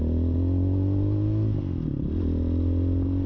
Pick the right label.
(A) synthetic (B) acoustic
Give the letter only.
B